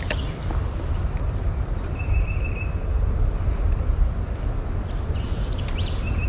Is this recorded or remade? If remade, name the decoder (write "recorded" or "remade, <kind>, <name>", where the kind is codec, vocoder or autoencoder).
recorded